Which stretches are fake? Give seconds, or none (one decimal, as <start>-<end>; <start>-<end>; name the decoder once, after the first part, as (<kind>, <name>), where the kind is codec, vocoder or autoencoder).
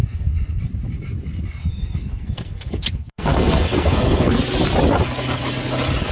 0.0-0.6 (codec, SNAC); 1.6-4.4